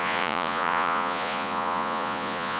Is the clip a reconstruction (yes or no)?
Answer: yes